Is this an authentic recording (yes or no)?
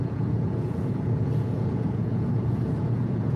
no